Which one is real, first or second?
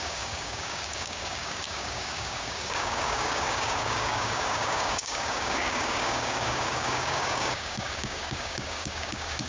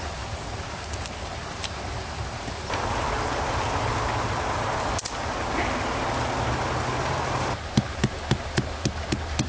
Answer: second